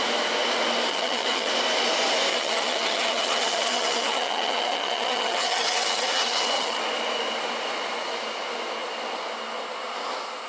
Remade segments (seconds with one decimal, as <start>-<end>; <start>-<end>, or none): 0.9-1.5; 2.3-6.8